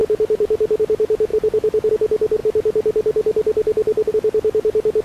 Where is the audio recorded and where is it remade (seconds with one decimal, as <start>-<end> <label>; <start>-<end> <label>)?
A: 0.0-0.8 remade; 0.8-5.0 recorded